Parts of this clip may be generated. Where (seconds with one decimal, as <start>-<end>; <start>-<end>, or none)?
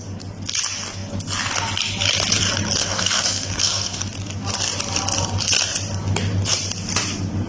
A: 2.8-4.0